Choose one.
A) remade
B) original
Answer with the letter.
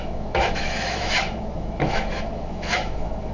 A